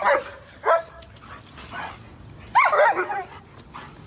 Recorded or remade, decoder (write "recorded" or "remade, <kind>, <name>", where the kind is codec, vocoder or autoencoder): recorded